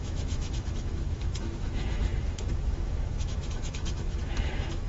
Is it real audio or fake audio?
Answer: fake